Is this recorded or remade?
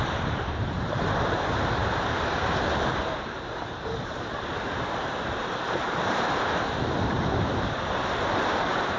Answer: remade